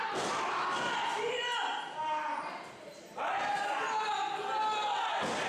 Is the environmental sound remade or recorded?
recorded